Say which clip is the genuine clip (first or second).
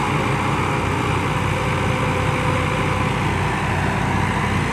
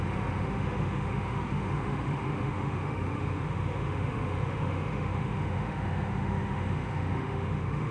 first